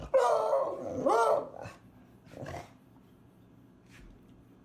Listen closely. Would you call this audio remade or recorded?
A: recorded